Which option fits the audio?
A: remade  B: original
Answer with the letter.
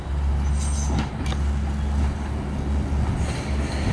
B